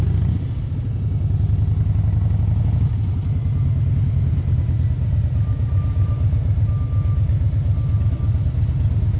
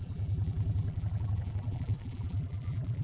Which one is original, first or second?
first